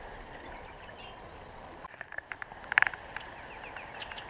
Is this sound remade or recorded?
recorded